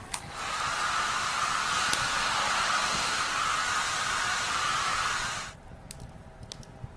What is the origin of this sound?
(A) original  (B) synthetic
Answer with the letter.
B